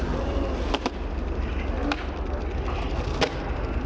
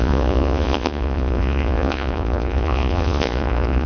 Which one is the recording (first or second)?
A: first